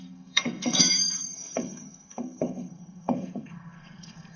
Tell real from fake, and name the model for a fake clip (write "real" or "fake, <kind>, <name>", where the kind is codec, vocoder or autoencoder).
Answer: fake, codec, SNAC